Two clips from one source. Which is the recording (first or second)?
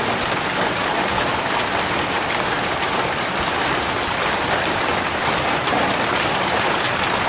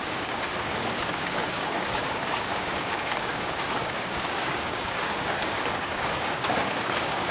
first